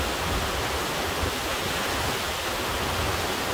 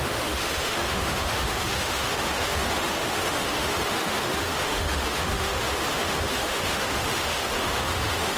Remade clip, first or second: second